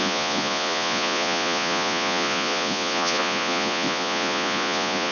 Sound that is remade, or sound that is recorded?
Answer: remade